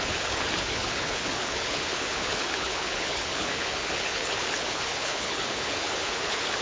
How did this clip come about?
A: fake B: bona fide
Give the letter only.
A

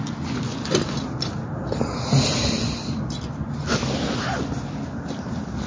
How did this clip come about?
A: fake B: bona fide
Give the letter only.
B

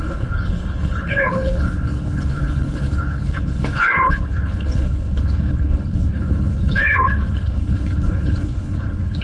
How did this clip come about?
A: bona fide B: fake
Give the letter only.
B